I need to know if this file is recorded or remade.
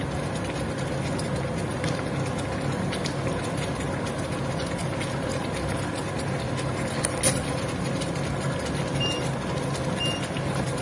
recorded